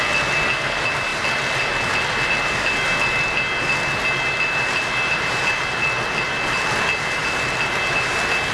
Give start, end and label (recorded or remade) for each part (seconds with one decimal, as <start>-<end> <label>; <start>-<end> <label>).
0.0-8.5 recorded